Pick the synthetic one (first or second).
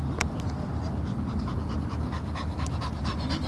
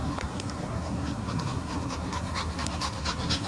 second